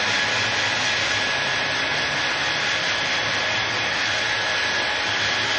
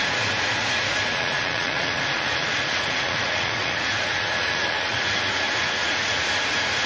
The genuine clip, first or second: first